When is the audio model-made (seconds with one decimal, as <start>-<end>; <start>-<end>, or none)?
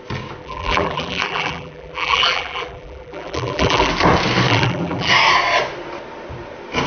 0.4-3.9; 4.5-5.1